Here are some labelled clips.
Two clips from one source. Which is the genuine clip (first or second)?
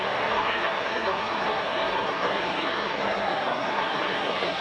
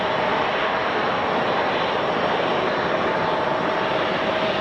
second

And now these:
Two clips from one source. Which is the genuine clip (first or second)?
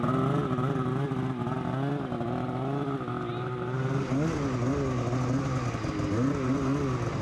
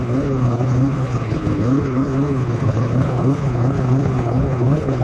first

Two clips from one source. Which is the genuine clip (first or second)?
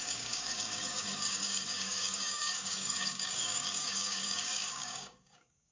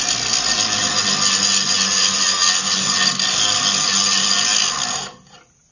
second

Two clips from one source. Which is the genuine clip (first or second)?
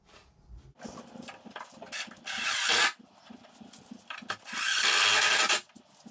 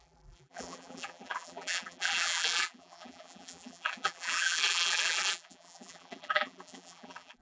first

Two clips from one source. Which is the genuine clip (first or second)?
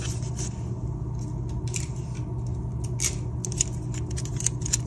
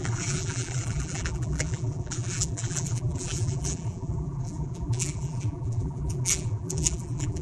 first